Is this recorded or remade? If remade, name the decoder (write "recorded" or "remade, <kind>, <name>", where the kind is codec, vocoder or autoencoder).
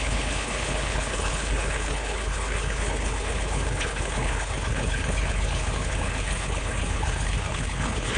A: remade, codec, HILCodec